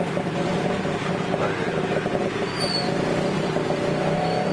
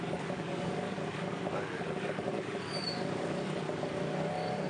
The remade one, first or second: second